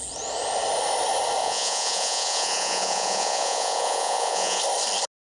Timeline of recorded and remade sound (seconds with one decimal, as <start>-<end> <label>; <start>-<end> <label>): 0.0-1.4 recorded; 1.4-4.6 remade; 4.6-5.3 recorded